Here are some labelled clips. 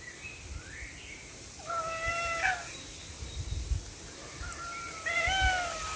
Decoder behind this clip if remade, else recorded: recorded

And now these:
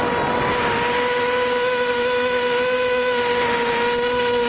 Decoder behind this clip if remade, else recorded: recorded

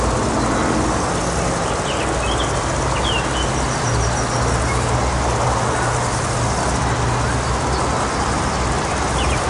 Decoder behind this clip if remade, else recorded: recorded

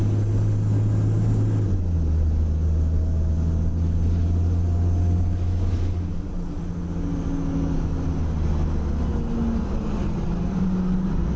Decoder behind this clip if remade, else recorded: recorded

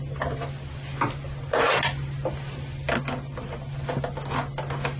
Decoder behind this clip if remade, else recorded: recorded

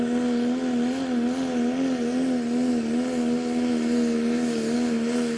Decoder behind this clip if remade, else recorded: recorded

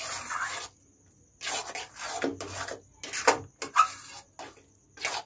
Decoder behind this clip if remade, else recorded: recorded